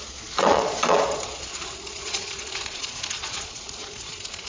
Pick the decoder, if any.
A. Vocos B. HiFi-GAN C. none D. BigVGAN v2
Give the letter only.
A